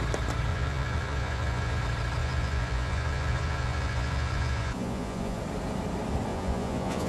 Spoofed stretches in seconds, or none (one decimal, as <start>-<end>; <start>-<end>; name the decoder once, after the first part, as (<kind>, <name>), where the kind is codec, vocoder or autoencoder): 0.5-1.8 (vocoder, Vocos); 2.2-5.4; 6.3-7.1

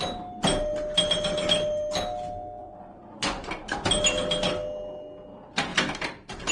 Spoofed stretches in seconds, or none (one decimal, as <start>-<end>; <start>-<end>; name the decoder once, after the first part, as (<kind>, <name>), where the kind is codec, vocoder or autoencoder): 2.6-3.5 (vocoder, Vocos)